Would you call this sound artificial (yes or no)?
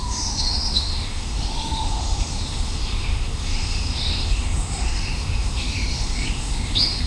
yes